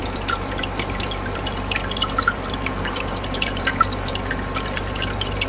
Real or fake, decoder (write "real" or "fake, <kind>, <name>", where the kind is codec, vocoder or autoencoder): fake, vocoder, BigVGAN v2